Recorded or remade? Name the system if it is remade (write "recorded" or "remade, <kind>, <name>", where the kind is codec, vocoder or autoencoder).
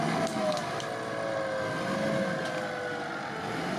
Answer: recorded